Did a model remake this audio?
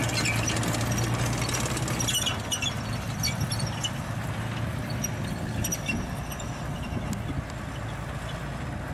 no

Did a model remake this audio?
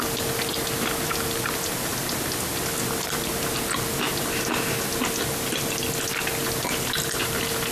no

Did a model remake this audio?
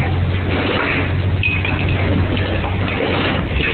no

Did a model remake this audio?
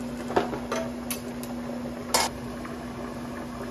no